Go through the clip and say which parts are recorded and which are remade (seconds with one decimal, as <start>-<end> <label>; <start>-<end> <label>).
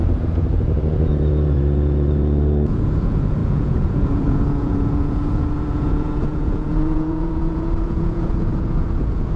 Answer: 0.0-9.4 remade